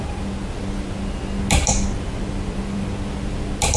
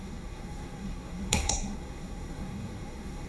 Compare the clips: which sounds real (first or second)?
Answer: first